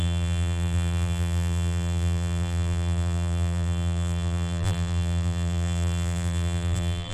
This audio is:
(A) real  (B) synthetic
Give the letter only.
B